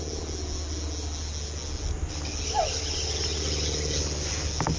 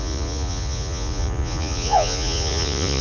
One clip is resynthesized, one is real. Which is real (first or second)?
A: first